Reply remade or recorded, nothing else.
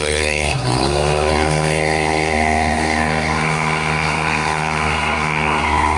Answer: remade